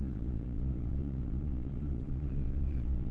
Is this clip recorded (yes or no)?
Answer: no